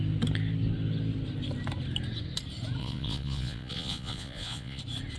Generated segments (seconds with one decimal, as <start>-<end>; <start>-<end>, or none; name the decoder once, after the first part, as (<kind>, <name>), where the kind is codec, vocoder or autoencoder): 2.8-4.8 (vocoder, Vocos)